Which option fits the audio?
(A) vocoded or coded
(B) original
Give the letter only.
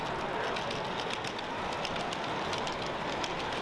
B